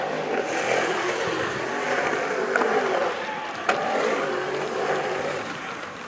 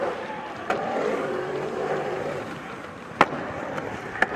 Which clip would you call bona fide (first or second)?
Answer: first